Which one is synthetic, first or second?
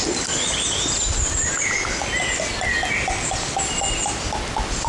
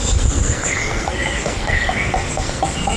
second